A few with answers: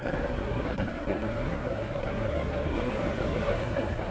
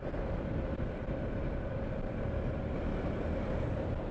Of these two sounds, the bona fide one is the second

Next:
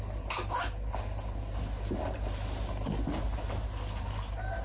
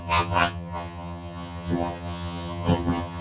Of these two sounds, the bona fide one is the first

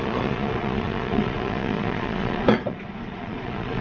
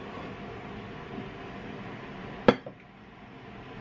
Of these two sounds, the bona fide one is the second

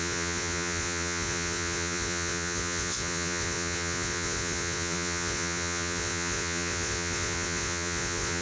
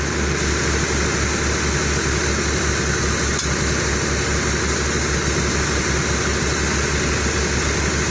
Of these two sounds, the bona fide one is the second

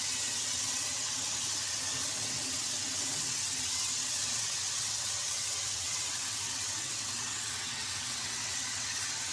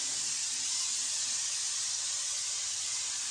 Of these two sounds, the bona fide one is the second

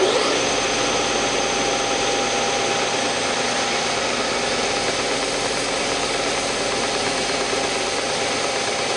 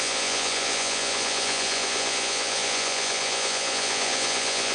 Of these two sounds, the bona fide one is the first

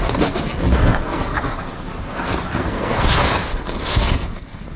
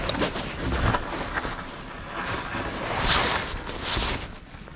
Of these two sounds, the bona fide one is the second